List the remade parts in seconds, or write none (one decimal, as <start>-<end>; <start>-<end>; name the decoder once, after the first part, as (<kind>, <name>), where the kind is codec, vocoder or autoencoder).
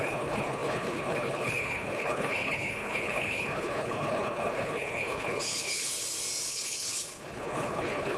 0.0-5.9 (codec, HILCodec); 6.5-8.2